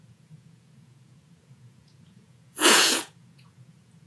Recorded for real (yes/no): no